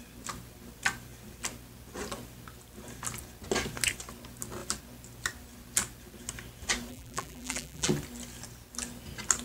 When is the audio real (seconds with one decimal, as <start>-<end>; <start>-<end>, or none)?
0.0-6.9; 7.9-9.4

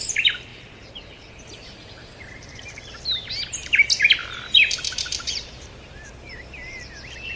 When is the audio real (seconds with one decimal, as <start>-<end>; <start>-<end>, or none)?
0.0-0.5; 2.8-4.2; 6.8-7.4

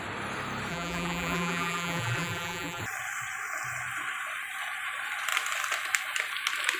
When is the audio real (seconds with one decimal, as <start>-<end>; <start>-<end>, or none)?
0.0-0.7; 2.8-6.8

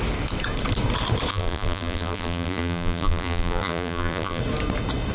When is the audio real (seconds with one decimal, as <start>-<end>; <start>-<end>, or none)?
0.0-1.3; 4.4-5.1